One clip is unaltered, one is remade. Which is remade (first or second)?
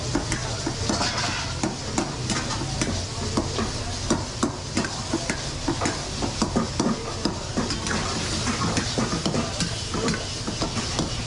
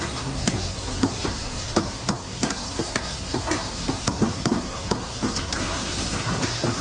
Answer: second